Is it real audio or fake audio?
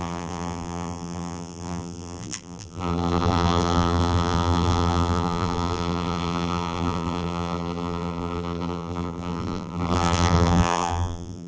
fake